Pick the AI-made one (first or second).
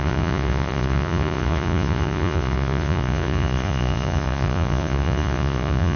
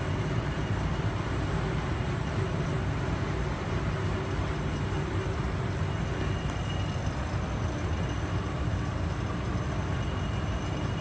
first